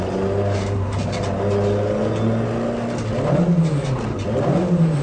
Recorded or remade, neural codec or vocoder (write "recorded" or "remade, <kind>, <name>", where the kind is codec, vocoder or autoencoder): recorded